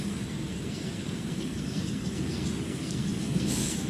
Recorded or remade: remade